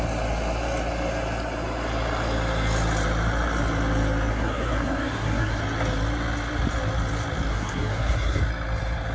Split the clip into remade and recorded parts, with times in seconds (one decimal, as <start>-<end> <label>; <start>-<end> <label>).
0.0-4.3 recorded; 4.3-5.6 remade; 5.6-7.5 recorded; 7.5-8.4 remade; 8.4-9.1 recorded